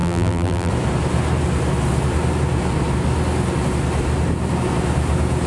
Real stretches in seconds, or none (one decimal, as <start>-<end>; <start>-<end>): 0.7-5.5

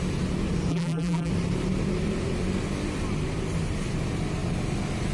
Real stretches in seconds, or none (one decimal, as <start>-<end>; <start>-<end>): 0.0-0.7; 1.3-5.1

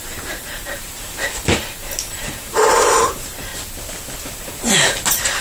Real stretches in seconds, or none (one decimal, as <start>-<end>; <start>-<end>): 3.5-4.2

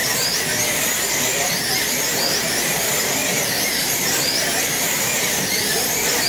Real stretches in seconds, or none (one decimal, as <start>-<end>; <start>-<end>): 0.0-1.8

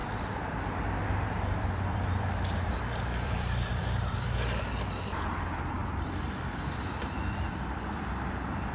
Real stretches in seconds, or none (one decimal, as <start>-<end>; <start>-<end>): 4.6-5.8